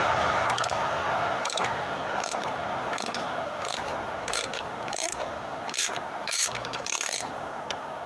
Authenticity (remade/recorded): remade